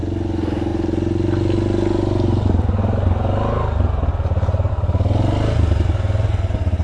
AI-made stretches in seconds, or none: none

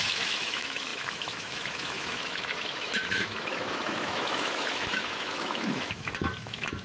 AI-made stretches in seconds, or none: 0.0-6.8 (autoencoder, DAC-VAE)

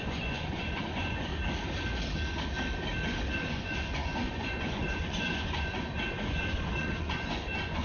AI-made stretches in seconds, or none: 0.0-1.3 (vocoder, Vocos); 3.4-7.8

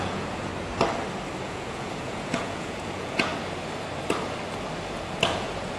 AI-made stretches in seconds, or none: 0.0-0.5 (vocoder, Vocos); 1.4-3.3; 5.3-5.8

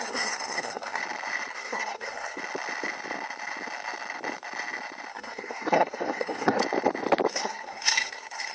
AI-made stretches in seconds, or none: 0.0-1.0 (codec, SNAC); 1.5-2.4; 5.1-6.6; 7.3-8.5